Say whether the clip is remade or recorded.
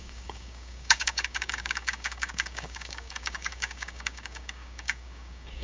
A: remade